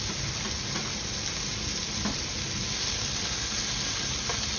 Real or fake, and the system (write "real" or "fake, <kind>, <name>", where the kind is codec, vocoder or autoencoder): real